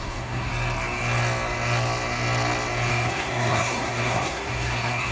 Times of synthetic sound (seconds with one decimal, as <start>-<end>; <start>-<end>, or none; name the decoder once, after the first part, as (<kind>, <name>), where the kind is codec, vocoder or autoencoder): 0.0-0.5 (codec, SNAC); 2.9-5.1